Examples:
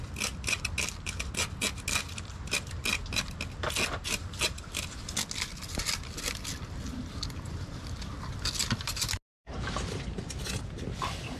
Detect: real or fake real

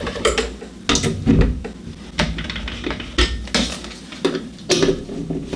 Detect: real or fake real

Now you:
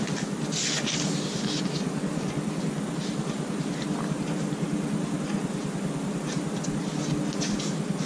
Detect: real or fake real